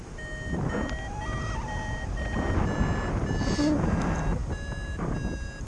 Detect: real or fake real